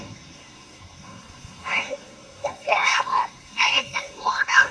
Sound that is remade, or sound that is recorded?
remade